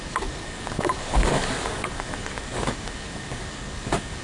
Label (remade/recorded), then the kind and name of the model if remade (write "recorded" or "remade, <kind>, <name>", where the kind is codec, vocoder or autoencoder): remade, codec, DAC